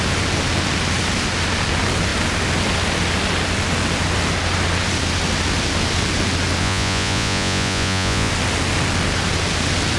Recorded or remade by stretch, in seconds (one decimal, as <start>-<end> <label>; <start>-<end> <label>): 0.0-6.6 recorded; 6.6-8.3 remade; 8.3-10.0 recorded

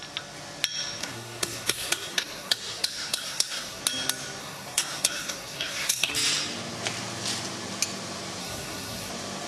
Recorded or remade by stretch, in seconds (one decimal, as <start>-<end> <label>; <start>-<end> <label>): 0.0-1.0 recorded; 1.0-3.8 remade; 3.8-4.4 recorded; 4.4-6.1 remade; 6.1-8.4 recorded; 8.4-9.1 remade; 9.1-9.5 recorded